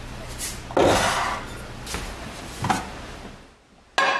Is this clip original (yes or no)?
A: yes